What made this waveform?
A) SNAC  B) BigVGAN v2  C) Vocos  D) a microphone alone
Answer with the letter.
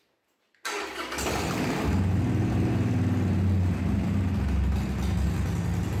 D